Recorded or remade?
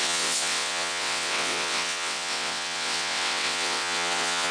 remade